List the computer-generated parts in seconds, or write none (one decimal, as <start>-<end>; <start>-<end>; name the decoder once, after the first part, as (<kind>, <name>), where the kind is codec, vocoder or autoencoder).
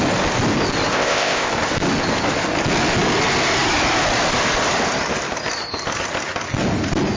0.9-1.5 (codec, ZipCodec)